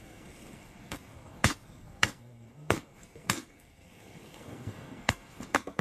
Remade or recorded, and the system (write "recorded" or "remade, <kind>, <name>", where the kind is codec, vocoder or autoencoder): remade, codec, SNAC